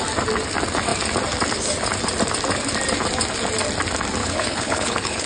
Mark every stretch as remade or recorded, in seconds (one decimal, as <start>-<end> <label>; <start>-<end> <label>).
0.0-4.2 recorded; 4.2-5.3 remade